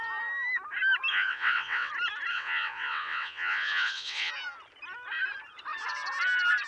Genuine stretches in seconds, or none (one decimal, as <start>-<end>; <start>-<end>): 0.0-1.1; 1.9-2.3; 4.3-6.7